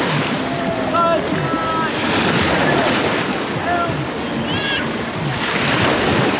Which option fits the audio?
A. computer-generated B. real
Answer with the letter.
B